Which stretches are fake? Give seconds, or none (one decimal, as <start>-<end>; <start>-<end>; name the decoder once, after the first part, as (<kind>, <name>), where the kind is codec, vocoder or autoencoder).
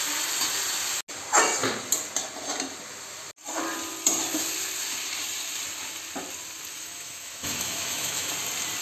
6.7-8.3 (autoencoder, DAC-VAE)